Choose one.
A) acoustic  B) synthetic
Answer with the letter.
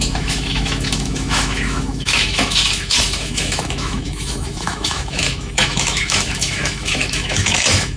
B